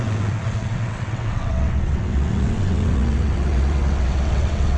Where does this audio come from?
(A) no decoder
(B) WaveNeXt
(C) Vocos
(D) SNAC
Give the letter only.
B